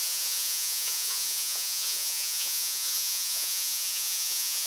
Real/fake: fake